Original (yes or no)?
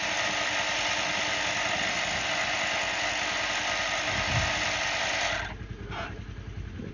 yes